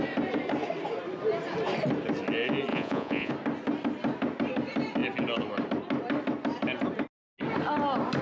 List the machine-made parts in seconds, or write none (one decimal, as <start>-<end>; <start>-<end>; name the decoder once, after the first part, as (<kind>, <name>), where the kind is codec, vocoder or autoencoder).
2.7-3.3 (vocoder, Vocos)